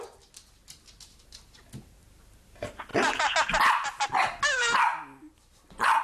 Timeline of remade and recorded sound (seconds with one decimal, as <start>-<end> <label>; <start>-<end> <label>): 0.0-6.0 recorded